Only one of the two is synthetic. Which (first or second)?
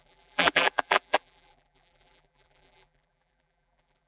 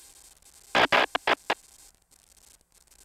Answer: first